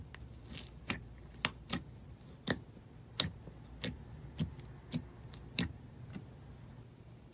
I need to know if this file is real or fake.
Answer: real